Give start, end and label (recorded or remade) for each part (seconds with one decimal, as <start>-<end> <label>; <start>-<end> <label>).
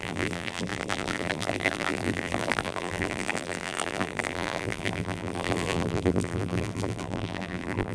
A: 0.0-7.9 remade